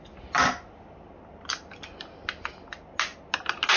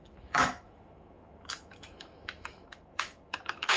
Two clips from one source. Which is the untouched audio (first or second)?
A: first